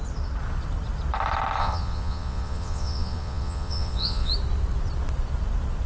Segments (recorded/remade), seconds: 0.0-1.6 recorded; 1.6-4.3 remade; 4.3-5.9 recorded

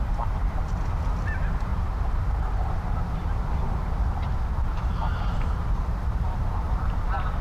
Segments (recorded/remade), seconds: 0.0-1.7 recorded; 1.7-3.0 remade; 3.0-4.3 recorded; 4.3-6.7 remade; 6.7-7.4 recorded

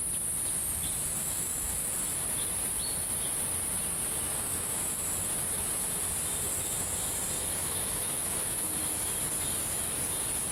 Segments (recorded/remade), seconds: 0.0-1.2 recorded; 1.2-1.9 remade; 1.9-4.3 recorded; 4.3-5.0 remade; 5.0-7.6 recorded; 7.6-8.7 remade; 8.7-10.5 recorded